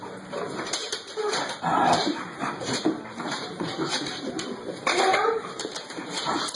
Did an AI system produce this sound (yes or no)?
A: yes